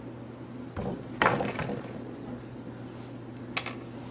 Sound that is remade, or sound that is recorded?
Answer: recorded